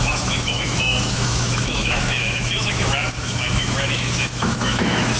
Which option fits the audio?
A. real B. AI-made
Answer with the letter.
B